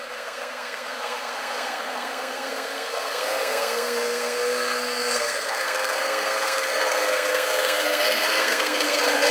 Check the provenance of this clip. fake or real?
fake